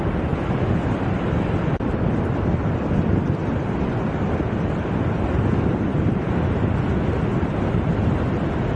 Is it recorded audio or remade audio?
recorded